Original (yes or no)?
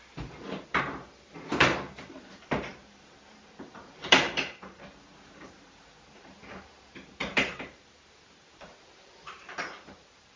no